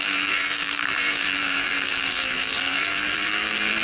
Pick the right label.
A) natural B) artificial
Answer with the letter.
B